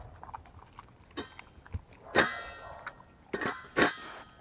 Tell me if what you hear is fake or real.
real